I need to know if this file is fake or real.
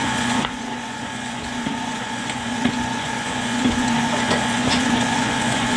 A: fake